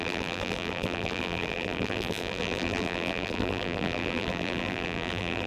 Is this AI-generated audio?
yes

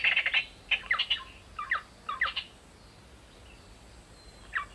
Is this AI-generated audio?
no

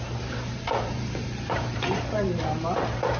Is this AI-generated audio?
yes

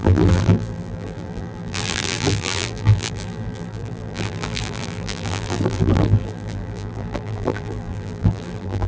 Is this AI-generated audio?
yes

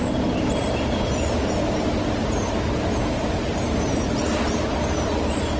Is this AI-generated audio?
no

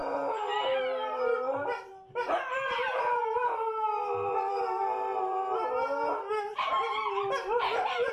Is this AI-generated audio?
yes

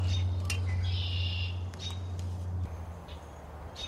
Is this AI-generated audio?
no